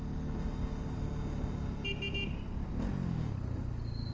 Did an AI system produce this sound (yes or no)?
no